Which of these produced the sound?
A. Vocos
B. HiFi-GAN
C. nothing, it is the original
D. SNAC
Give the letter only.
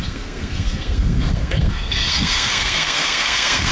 D